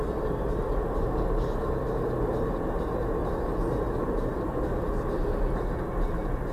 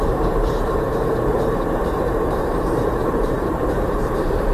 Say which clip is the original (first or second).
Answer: first